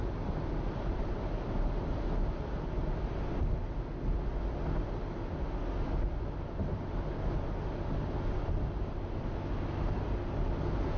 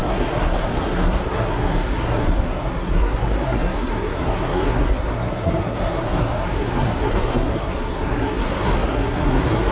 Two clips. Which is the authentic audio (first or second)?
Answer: first